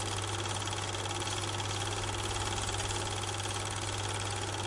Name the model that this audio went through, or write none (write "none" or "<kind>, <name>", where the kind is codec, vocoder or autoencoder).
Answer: none